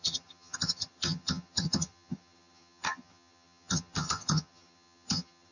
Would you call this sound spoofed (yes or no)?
yes